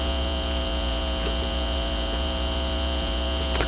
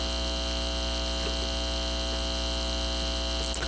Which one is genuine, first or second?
second